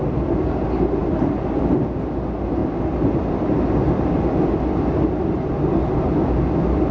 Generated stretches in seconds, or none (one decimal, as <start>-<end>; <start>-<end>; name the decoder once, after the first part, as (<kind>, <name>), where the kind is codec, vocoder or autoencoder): none